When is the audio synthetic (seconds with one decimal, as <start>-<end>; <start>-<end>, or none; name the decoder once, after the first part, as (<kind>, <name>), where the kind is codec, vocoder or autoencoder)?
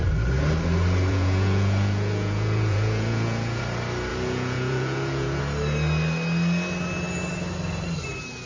1.1-3.6 (vocoder, Vocos); 4.1-5.4